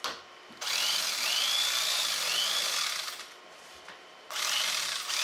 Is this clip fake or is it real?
real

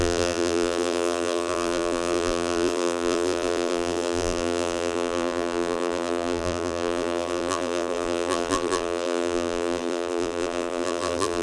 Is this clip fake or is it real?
fake